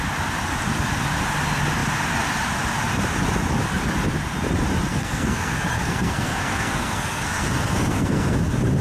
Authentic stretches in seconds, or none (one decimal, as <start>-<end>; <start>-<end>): 0.0-4.9; 8.4-8.8